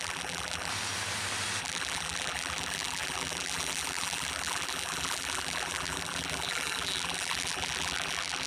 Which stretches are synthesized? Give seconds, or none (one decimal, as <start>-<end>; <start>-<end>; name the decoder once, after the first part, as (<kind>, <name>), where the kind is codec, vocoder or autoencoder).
0.0-0.7 (vocoder, BigVGAN v2); 1.6-8.5